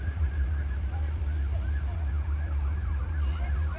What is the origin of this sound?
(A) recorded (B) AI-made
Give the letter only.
B